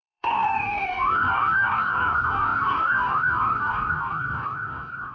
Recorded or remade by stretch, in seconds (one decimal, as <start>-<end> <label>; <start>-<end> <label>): 0.0-5.1 remade